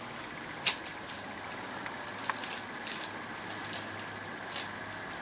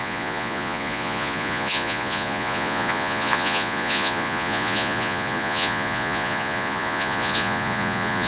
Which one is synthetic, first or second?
second